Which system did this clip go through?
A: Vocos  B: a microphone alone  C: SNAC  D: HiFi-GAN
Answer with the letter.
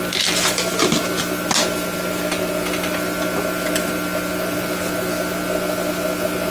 B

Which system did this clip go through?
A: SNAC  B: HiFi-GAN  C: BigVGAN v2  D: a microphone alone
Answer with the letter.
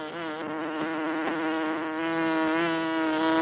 D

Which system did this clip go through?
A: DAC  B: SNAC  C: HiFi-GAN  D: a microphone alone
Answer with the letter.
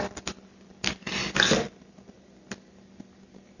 D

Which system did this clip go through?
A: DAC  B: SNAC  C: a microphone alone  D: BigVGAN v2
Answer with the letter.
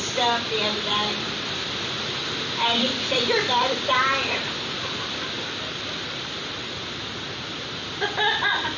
C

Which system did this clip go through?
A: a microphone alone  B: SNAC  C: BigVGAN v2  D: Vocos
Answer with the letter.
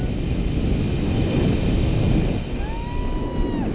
A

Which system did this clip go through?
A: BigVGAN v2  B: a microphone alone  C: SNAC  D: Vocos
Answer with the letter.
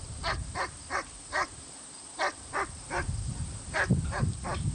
A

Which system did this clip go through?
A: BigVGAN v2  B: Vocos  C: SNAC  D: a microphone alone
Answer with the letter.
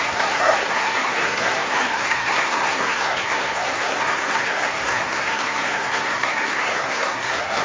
C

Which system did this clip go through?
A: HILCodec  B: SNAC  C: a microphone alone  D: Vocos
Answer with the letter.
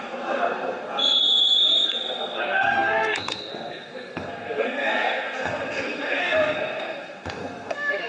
B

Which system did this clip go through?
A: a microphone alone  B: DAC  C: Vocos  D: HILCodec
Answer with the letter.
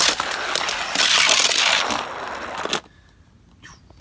A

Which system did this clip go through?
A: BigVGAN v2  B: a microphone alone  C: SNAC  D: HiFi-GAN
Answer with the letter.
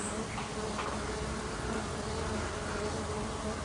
B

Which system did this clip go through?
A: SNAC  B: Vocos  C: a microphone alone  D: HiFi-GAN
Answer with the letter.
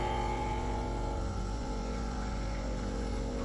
B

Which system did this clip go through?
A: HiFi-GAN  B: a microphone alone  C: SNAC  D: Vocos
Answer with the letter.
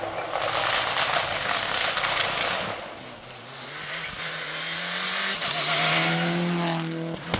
B